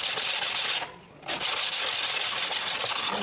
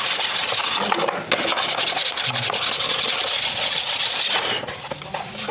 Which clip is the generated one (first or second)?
second